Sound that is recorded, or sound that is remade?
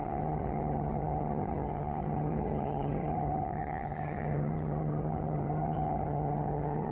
remade